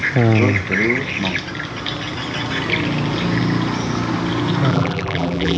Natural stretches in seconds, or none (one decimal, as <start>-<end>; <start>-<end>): 0.0-4.7